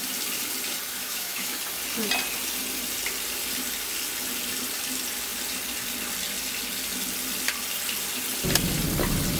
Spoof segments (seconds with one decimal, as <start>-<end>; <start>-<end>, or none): 1.0-1.6